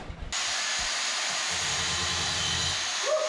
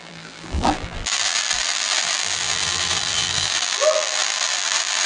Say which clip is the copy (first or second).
second